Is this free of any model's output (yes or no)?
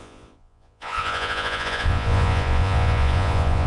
no